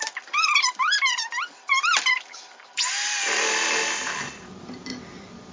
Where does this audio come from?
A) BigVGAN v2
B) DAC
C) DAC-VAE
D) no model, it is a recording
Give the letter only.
A